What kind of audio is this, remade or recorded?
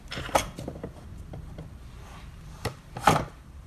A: remade